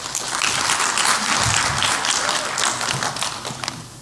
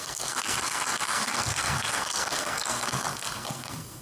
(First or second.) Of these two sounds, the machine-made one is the second